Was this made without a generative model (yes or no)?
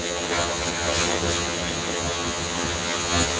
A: no